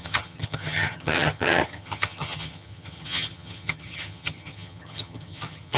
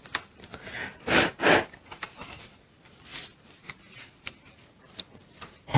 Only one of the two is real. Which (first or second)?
second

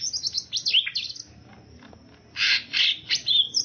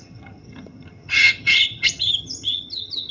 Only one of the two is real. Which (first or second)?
first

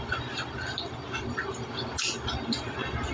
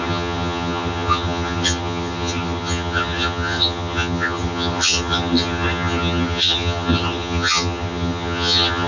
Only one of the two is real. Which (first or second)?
first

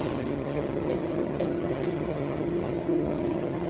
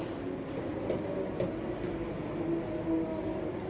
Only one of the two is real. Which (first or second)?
second